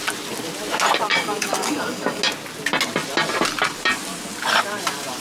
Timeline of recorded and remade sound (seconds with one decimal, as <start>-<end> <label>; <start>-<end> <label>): 0.0-1.1 recorded; 1.1-2.2 remade; 2.2-5.2 recorded